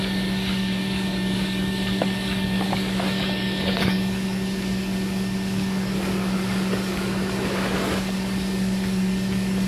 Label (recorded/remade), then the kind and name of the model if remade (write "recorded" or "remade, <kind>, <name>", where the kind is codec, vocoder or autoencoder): remade, codec, DAC